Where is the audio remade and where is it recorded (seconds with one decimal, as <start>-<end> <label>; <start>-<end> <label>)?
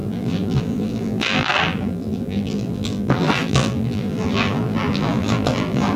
0.0-6.0 remade